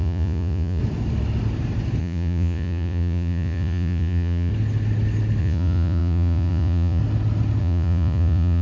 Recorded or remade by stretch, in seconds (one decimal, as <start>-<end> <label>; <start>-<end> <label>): 0.0-0.8 remade; 0.8-2.0 recorded; 2.0-4.5 remade; 4.5-5.4 recorded; 5.4-7.0 remade; 7.0-7.6 recorded; 7.6-8.6 remade